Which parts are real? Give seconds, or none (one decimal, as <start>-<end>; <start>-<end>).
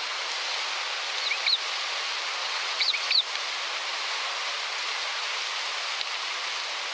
0.0-2.4; 3.1-6.9